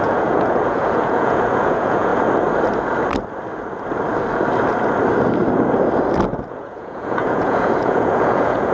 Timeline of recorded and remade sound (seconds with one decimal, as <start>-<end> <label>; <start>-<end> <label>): 0.0-2.1 remade; 2.1-6.5 recorded; 6.5-8.7 remade